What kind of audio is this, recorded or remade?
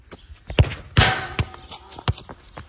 recorded